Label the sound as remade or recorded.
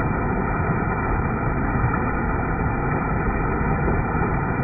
recorded